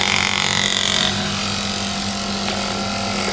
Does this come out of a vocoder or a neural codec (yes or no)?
no